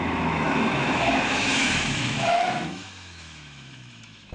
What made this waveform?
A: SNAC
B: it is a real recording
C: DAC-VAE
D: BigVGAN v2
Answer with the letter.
C